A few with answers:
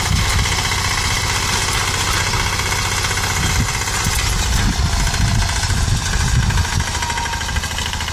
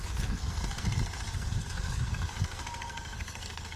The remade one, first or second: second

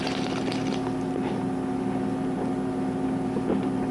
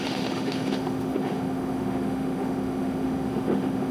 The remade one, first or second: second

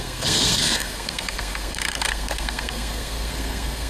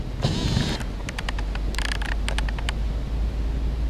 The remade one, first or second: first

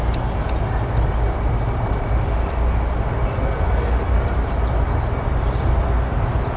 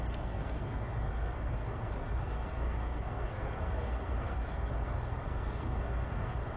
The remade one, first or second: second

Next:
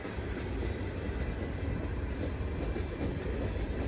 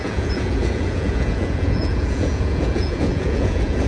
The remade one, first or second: second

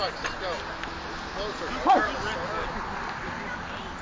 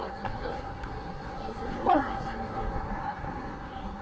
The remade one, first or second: second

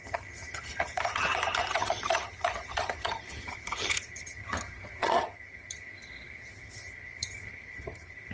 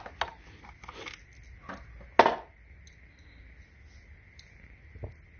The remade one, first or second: first